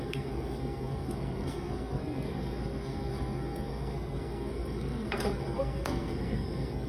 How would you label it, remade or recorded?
remade